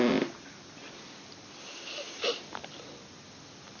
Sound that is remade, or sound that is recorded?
recorded